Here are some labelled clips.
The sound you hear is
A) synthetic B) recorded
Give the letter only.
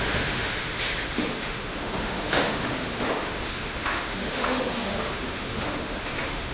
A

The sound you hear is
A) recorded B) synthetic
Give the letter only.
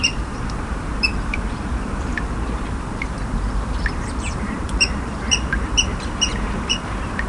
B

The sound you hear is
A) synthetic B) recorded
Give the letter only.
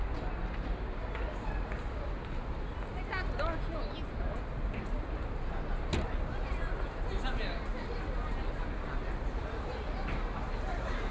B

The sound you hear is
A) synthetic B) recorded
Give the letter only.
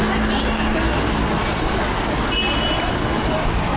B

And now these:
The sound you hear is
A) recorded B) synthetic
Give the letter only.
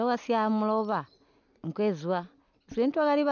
A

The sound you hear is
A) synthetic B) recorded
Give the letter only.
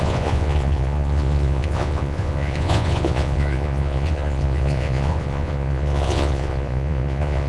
A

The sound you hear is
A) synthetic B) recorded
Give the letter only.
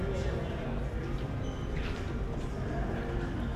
B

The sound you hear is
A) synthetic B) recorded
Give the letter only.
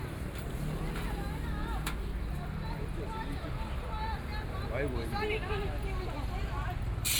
B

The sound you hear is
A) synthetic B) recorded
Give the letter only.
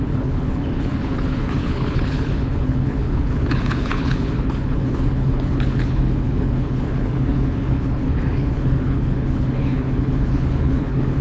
A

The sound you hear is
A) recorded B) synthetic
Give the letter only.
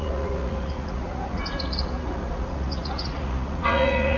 B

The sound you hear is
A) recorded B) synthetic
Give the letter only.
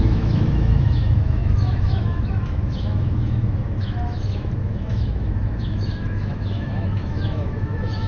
B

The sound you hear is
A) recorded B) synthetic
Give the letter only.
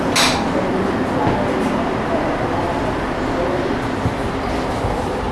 A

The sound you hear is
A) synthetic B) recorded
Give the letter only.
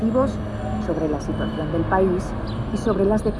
B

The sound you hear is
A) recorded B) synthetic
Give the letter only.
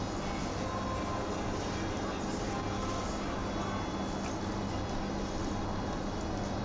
A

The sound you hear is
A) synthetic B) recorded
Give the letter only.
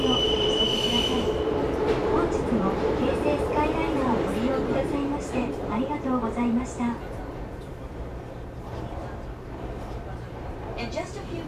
A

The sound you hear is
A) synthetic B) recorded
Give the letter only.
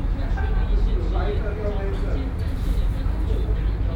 B